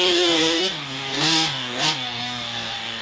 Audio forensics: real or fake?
fake